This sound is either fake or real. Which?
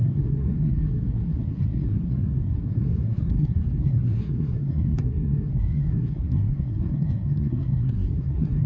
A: fake